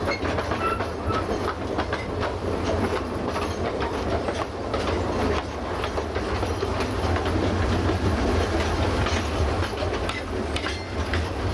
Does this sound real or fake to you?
real